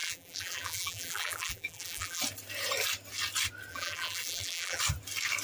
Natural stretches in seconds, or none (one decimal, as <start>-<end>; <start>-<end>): 2.2-3.7; 4.8-5.4